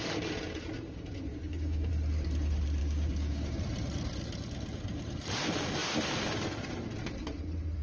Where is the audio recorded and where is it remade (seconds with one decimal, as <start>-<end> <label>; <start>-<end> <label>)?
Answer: 0.0-1.3 recorded; 1.3-1.9 remade; 1.9-2.8 recorded; 2.8-3.6 remade; 3.6-7.8 recorded